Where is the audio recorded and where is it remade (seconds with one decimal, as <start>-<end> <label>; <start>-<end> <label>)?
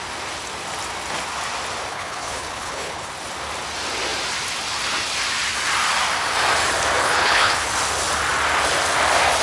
0.0-1.9 recorded; 1.9-3.1 remade; 3.1-7.0 recorded; 7.0-7.7 remade; 7.7-9.4 recorded